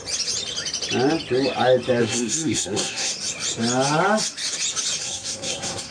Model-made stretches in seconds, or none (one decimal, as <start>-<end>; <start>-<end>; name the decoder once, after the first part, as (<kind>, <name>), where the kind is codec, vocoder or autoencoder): 2.0-3.1 (codec, SNAC); 5.0-5.9